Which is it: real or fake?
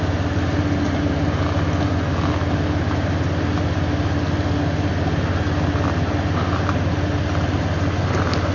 real